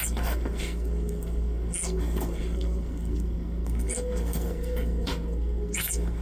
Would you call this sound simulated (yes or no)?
yes